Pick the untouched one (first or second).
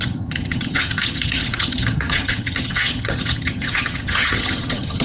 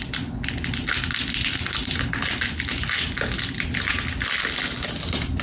second